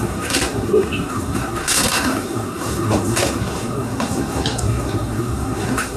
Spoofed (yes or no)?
yes